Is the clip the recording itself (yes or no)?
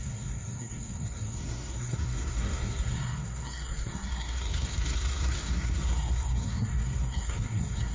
no